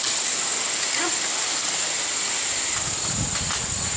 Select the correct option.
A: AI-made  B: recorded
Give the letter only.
B